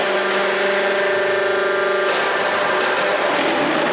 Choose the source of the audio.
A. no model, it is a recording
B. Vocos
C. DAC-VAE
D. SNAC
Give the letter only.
A